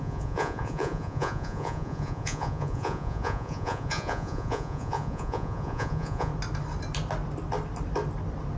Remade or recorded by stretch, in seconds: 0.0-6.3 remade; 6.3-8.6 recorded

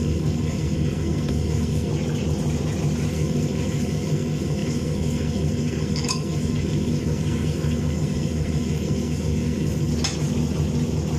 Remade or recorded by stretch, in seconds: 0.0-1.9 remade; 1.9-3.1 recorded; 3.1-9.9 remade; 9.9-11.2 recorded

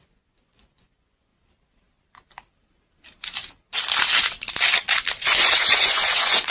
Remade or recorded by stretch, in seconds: 0.0-1.3 remade; 1.3-5.2 recorded; 5.2-6.5 remade

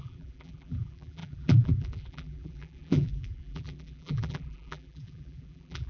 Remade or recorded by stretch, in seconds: 0.0-5.9 remade

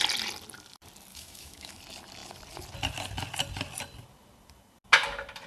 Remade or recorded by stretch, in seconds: 0.0-1.1 recorded; 1.1-1.8 remade; 1.8-5.5 recorded

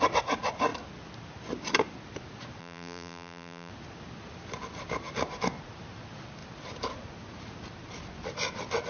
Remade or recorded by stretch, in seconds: 0.0-2.6 recorded; 2.6-3.7 remade; 3.7-8.9 recorded

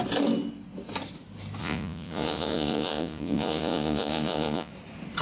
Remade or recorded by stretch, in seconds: 0.0-1.6 recorded; 1.6-4.7 remade; 4.7-5.2 recorded

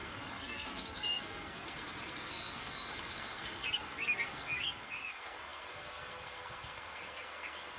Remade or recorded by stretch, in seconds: 0.0-7.8 remade